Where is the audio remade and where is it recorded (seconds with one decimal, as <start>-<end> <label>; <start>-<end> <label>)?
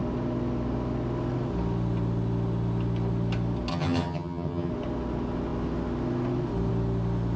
0.0-3.7 recorded; 3.7-4.7 remade; 4.7-7.4 recorded